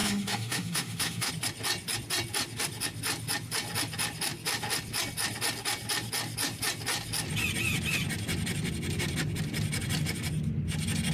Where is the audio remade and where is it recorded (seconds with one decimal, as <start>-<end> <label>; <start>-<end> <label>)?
0.0-1.3 remade; 1.3-11.1 recorded